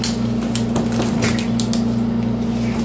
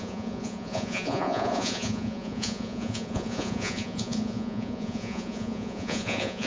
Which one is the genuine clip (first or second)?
first